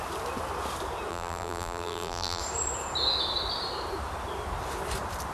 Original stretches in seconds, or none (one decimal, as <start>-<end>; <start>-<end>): 0.0-1.1; 2.4-5.3